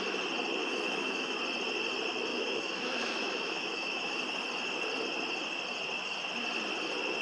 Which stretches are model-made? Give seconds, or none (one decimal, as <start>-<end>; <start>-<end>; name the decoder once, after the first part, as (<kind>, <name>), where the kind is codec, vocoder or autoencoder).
0.6-1.4 (autoencoder, DAC-VAE); 2.3-4.1